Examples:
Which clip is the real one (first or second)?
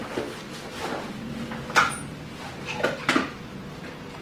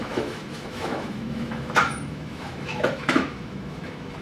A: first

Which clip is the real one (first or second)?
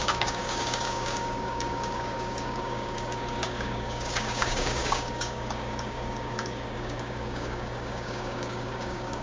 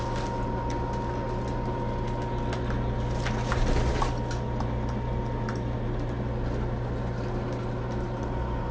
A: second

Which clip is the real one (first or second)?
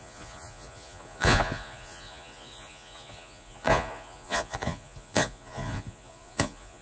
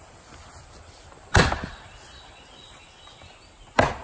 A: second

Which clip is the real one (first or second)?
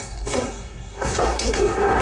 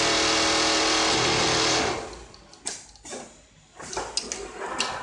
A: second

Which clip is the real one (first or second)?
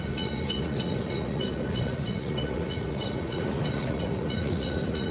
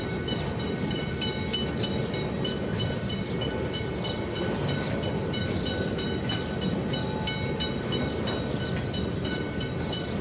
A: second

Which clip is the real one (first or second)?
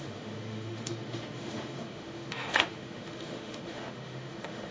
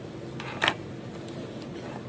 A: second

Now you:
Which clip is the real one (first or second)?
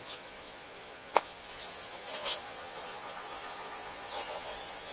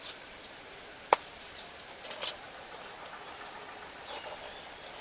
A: second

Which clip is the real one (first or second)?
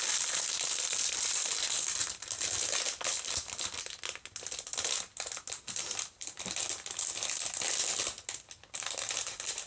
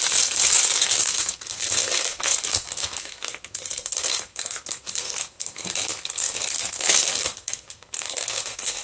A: first